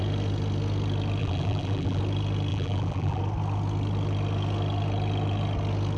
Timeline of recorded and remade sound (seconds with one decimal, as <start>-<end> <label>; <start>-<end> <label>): 0.0-1.2 recorded; 1.2-2.0 remade; 2.0-2.5 recorded; 2.5-3.2 remade; 3.2-6.0 recorded